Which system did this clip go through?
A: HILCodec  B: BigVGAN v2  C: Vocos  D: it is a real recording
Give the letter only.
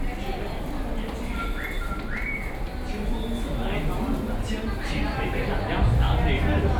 D